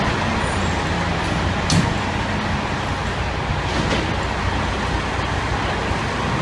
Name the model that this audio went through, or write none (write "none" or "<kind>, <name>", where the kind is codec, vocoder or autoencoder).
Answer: none